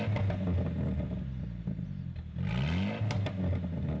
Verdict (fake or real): real